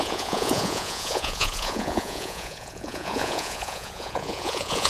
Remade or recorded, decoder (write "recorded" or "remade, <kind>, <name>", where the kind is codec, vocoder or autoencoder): remade, vocoder, Vocos